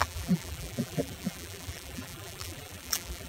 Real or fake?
fake